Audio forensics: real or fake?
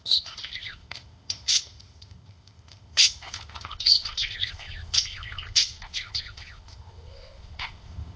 fake